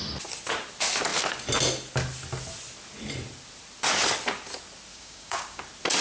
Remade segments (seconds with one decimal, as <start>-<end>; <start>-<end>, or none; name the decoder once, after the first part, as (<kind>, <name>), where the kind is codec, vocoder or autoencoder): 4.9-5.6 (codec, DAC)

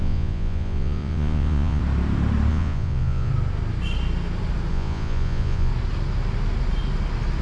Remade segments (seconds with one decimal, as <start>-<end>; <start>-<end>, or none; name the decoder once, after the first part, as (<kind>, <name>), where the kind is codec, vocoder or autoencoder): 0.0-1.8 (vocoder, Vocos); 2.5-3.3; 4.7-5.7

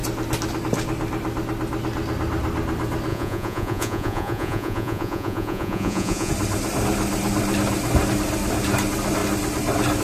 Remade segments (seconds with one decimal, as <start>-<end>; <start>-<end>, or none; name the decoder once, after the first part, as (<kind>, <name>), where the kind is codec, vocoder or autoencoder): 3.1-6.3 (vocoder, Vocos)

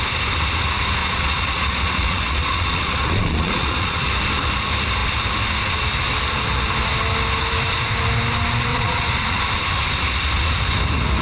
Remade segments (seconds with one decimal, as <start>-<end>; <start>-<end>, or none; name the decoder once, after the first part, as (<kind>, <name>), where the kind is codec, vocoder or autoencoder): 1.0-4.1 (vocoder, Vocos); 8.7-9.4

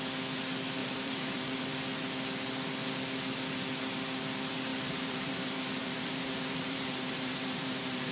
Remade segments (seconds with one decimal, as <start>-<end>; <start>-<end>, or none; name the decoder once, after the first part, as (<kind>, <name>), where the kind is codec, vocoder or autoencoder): 0.8-1.6 (vocoder, BigVGAN v2); 4.7-8.1

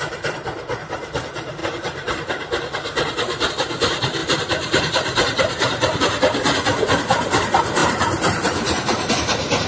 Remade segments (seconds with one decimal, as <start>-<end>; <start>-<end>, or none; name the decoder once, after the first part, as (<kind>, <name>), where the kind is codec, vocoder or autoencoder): 1.6-3.5 (vocoder, BigVGAN v2); 4.2-6.0; 7.8-9.1